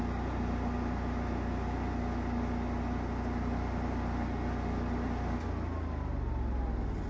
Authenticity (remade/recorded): recorded